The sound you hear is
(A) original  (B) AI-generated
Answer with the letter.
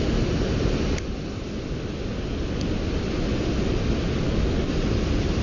A